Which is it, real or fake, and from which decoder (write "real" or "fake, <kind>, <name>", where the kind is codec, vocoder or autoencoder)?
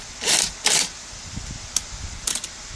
fake, vocoder, BigVGAN v2